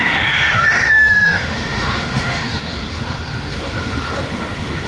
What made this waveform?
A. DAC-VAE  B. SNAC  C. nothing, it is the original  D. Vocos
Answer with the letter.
A